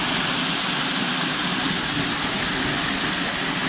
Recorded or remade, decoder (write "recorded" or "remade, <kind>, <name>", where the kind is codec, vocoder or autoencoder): recorded